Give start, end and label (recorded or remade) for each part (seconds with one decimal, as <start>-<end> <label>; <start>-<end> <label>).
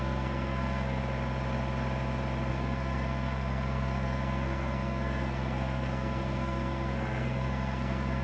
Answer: 0.0-1.0 remade; 1.0-2.5 recorded; 2.5-8.2 remade